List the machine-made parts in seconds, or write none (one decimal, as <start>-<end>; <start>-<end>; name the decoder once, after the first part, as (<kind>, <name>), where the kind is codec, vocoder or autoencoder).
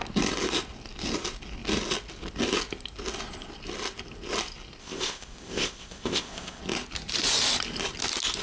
4.8-6.6 (codec, ZipCodec)